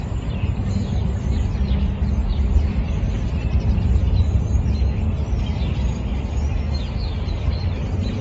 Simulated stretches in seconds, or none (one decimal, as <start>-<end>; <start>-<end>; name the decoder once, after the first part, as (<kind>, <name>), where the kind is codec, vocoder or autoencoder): none